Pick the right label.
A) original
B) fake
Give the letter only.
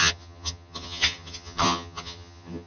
B